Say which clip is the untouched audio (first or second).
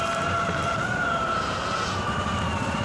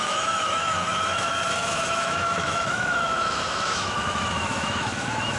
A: first